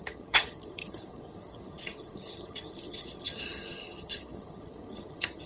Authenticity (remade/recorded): remade